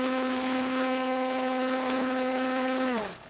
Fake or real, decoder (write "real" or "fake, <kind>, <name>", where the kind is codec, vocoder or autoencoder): fake, codec, HILCodec